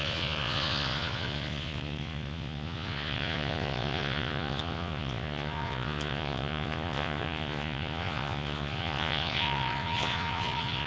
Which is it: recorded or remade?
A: remade